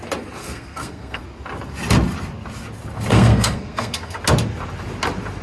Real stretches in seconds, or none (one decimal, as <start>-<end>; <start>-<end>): 0.0-0.4; 1.2-3.1; 4.2-5.4